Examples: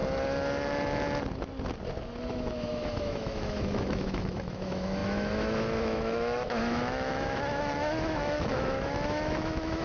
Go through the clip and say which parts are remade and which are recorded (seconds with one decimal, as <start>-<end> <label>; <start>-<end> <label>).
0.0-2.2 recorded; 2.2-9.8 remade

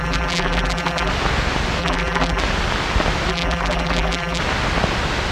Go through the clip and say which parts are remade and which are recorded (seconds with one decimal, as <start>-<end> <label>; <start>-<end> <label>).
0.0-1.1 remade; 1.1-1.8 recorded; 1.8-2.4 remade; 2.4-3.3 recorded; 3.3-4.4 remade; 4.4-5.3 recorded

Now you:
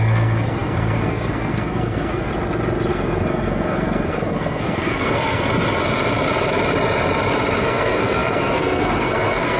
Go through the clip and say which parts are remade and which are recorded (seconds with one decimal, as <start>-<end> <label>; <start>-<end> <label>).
0.0-2.3 remade; 2.3-2.9 recorded; 2.9-5.5 remade; 5.5-7.6 recorded; 7.6-9.6 remade

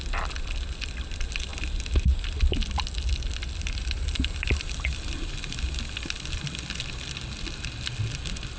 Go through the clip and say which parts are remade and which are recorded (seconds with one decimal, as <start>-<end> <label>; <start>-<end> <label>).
0.0-8.6 recorded

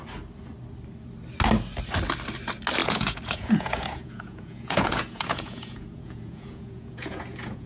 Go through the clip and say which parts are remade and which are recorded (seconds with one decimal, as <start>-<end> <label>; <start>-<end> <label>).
0.0-2.8 recorded; 2.8-7.7 remade